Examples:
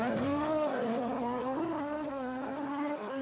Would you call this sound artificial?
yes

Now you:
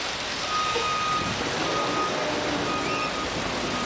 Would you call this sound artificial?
no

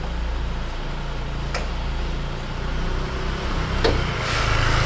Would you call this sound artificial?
no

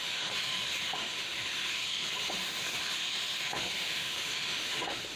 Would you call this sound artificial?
yes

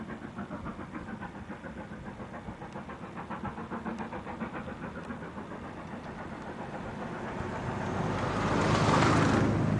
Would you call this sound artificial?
no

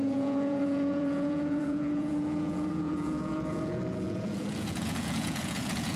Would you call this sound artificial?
yes